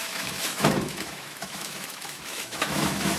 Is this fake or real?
fake